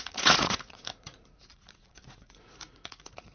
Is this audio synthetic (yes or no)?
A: yes